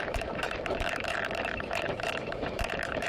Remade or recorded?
remade